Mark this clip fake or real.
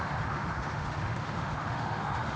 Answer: fake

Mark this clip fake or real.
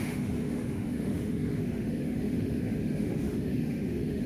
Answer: fake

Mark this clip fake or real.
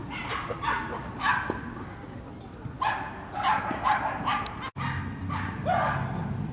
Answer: real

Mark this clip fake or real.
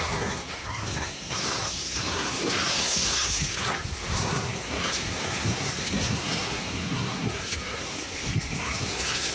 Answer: fake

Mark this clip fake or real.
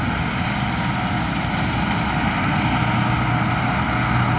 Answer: real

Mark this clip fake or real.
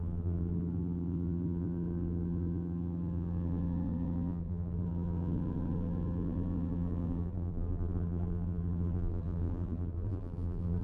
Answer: fake